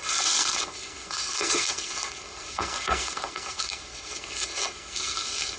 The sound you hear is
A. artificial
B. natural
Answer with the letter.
A